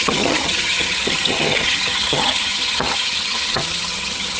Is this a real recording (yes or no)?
no